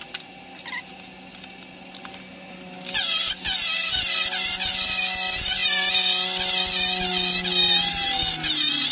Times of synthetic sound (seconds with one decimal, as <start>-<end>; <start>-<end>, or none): none